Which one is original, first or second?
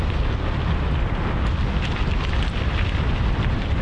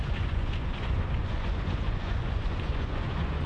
first